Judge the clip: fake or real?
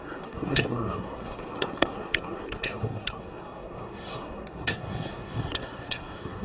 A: fake